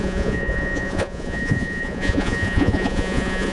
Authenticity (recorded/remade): remade